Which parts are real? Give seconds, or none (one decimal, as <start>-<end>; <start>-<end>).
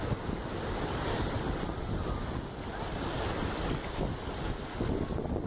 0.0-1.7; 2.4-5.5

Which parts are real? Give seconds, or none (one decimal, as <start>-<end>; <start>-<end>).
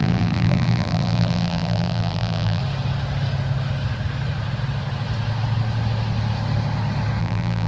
2.6-7.2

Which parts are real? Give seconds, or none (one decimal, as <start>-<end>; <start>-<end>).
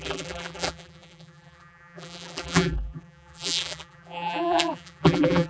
none